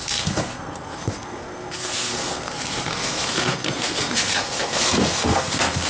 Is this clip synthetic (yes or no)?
yes